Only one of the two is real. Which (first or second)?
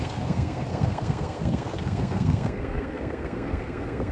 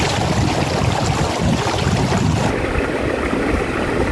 second